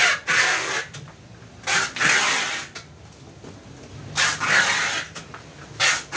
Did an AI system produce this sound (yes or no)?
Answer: no